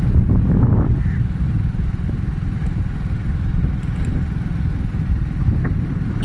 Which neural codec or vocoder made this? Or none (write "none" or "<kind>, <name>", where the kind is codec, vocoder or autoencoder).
none